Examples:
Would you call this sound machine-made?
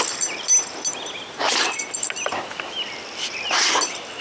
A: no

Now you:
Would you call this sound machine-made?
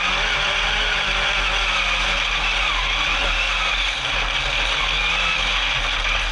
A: no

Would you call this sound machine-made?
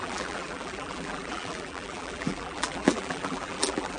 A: yes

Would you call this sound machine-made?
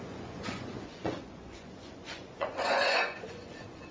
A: yes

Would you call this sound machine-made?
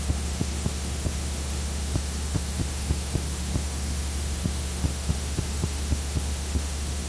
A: yes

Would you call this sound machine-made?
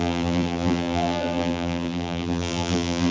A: yes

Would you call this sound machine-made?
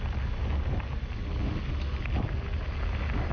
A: no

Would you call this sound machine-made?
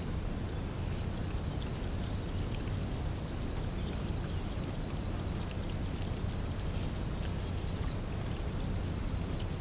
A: no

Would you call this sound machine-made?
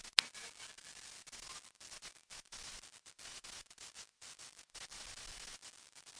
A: no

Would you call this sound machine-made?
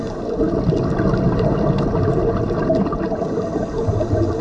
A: no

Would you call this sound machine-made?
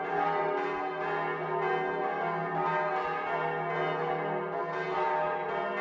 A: no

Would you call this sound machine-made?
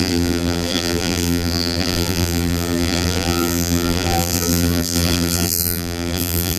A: yes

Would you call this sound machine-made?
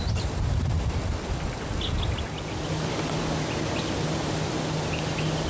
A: no